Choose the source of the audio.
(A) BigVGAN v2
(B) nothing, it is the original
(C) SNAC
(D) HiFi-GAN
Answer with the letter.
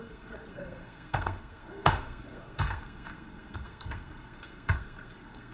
C